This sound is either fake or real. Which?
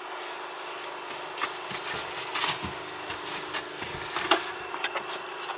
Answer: real